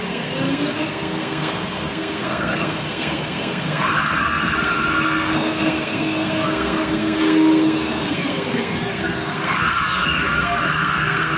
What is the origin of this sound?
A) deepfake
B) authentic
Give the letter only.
A